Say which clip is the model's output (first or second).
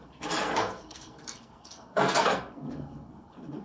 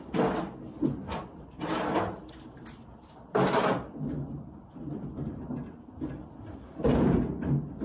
first